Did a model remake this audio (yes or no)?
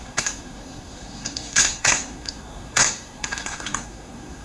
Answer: yes